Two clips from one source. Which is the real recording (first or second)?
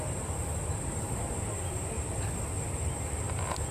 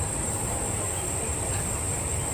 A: first